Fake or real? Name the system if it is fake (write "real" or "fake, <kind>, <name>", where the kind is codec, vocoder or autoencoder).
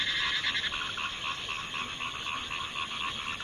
real